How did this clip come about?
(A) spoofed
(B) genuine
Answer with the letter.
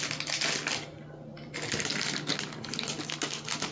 B